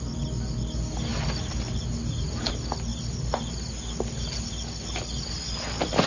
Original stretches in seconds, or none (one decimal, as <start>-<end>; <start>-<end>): 0.0-6.1